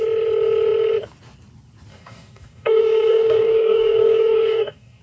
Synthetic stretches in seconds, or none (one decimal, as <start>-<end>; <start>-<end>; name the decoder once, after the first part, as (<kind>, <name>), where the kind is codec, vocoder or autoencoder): 1.9-5.0 (codec, DAC)